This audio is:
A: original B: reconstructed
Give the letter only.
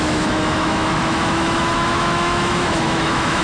B